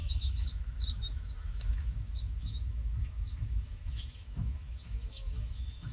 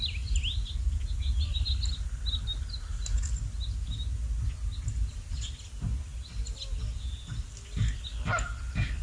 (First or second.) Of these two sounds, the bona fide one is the second